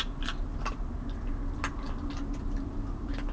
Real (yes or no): yes